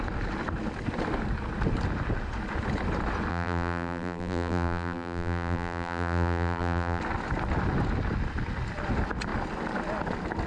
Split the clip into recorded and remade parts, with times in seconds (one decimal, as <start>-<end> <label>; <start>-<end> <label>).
0.0-3.3 recorded; 3.3-7.0 remade; 7.0-10.5 recorded